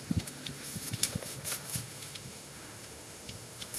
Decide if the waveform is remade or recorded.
remade